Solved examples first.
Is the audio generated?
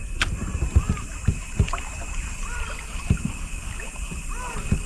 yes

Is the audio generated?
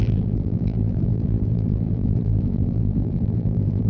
yes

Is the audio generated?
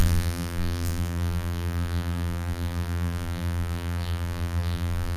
yes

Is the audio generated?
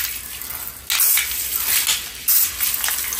no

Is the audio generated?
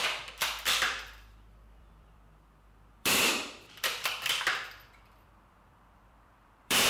yes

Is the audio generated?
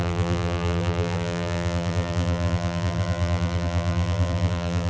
yes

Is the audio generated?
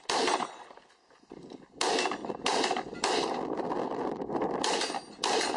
no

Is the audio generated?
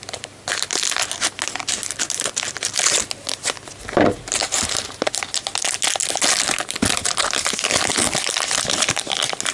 no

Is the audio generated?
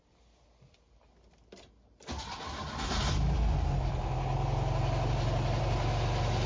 no